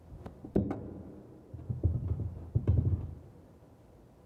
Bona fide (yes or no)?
yes